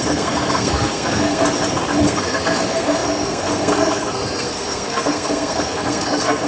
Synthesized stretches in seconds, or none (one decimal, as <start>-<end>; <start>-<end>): 0.0-1.4; 2.0-6.5

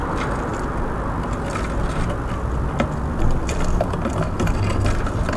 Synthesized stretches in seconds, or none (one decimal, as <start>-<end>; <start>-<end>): none

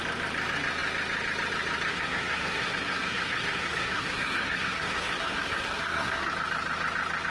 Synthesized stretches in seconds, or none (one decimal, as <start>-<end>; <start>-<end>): 1.9-6.3

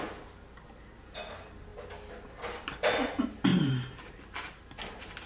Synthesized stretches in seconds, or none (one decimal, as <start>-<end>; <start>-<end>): 3.5-4.2

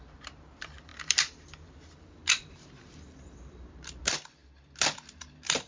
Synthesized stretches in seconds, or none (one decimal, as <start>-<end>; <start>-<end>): 0.0-4.4; 5.2-5.7

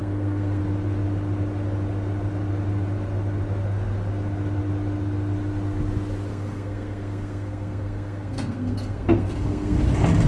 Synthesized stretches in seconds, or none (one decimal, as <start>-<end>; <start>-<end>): 0.0-0.6; 6.3-9.8

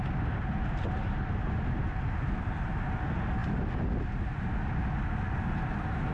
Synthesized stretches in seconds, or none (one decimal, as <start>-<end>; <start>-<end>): none